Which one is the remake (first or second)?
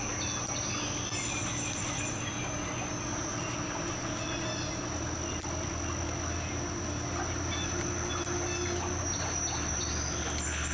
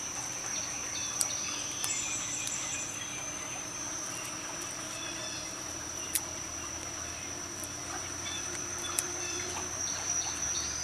second